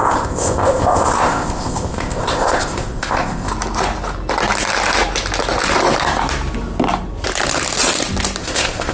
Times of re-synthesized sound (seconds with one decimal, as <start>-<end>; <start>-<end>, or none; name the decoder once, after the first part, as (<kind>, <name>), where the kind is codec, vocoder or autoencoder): 0.0-3.5 (codec, ZipCodec); 8.4-8.9